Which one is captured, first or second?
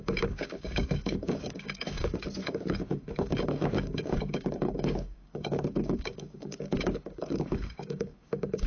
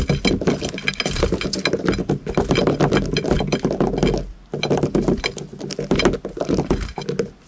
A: second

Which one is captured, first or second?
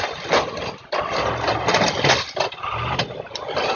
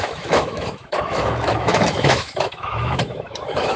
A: first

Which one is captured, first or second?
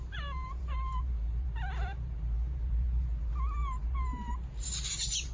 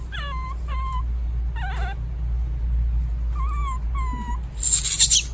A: second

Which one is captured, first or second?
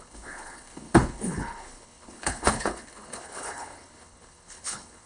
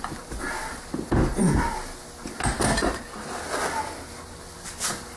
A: second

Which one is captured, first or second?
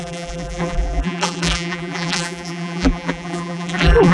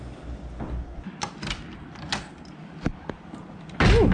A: second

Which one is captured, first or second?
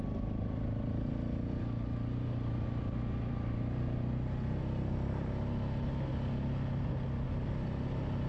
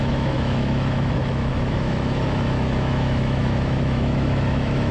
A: first